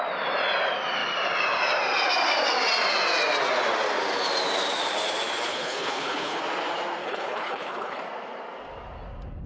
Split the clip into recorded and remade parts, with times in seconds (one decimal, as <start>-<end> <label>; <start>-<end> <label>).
0.0-5.5 recorded; 5.5-6.4 remade; 6.4-7.0 recorded; 7.0-8.0 remade; 8.0-9.5 recorded